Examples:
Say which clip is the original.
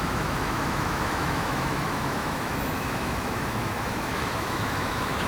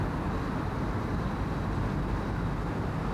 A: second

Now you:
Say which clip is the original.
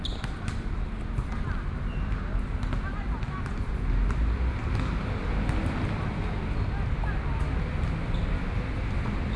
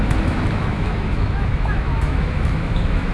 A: first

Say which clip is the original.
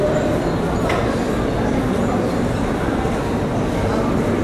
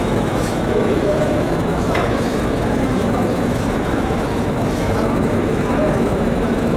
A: first